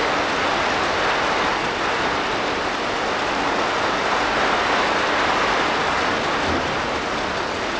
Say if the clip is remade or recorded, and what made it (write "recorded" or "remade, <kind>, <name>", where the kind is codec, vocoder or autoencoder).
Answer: recorded